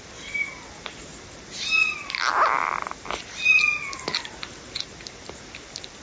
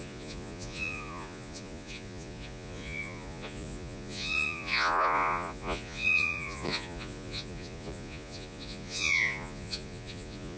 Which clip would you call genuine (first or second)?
first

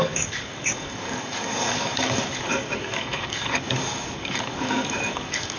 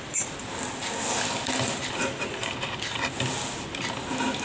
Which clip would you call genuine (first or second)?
second